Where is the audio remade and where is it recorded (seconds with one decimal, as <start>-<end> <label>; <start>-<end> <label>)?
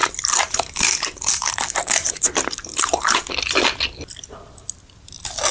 0.0-3.3 remade; 3.3-5.5 recorded